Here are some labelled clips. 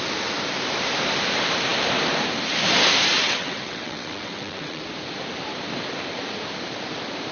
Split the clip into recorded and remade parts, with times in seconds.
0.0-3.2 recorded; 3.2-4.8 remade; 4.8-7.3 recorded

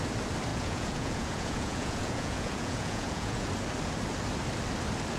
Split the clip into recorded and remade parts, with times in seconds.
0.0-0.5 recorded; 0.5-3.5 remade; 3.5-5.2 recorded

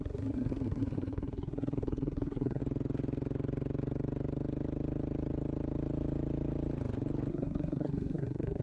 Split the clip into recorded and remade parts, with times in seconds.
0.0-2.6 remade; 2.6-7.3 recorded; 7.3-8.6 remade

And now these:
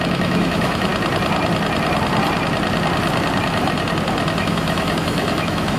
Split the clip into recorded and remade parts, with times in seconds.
0.0-0.9 remade; 0.9-4.4 recorded; 4.4-5.8 remade

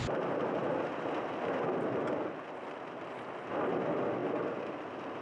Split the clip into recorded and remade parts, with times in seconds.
0.0-5.2 recorded

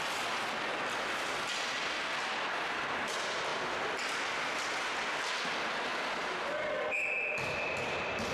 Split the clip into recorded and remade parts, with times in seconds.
0.0-3.5 recorded; 3.5-4.3 remade; 4.3-8.3 recorded